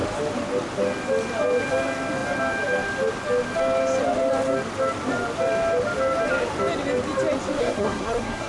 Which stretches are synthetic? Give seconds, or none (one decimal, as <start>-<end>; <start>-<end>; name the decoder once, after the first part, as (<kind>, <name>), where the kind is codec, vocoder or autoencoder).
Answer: 7.6-8.5 (codec, SNAC)